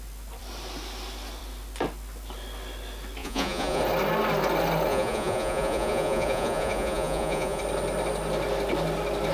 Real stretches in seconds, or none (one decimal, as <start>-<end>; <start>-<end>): 0.0-3.2; 3.8-4.9; 7.6-9.3